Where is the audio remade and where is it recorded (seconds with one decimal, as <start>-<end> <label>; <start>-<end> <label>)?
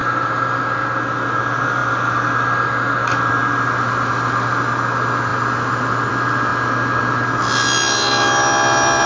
0.0-0.6 remade; 0.6-9.1 recorded